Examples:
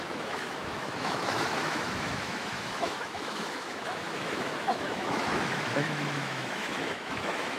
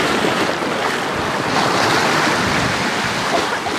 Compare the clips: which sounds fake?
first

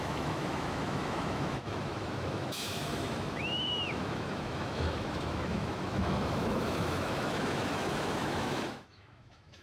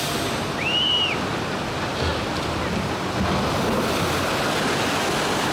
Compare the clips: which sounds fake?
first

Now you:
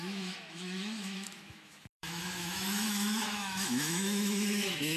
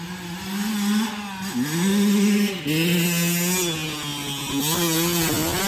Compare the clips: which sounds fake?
first